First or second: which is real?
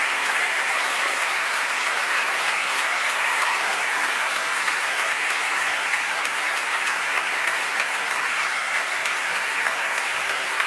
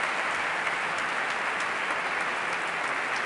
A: second